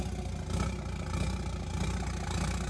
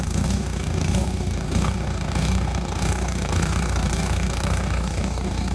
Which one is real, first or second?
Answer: first